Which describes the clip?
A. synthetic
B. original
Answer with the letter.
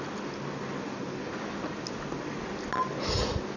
B